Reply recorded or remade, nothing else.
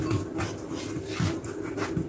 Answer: recorded